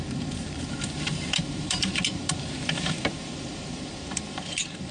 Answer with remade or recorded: remade